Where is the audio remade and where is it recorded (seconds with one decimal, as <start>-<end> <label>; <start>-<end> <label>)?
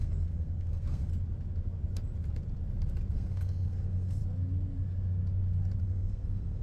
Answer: 0.0-1.1 remade; 1.1-3.1 recorded; 3.1-4.2 remade; 4.2-5.8 recorded; 5.8-6.6 remade